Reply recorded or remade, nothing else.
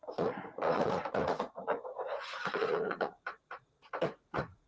remade